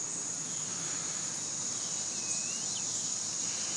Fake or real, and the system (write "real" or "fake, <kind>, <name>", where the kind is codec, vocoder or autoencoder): real